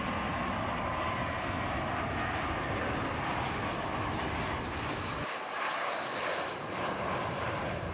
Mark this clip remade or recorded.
recorded